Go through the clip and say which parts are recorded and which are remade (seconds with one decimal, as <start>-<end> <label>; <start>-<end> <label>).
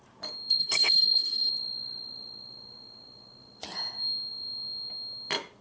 0.0-0.6 recorded; 0.6-1.5 remade; 1.5-5.6 recorded